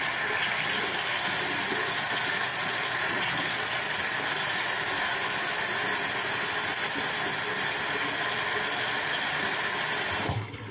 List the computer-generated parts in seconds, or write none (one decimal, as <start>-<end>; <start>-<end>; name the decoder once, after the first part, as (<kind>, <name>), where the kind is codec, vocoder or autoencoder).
2.5-3.8 (vocoder, Vocos)